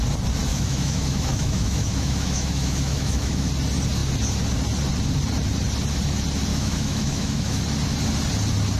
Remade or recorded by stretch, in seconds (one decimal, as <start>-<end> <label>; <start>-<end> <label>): 0.0-0.5 recorded; 0.5-3.5 remade; 3.5-6.5 recorded; 6.5-7.6 remade; 7.6-8.8 recorded